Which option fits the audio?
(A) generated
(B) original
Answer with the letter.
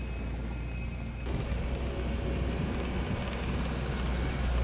B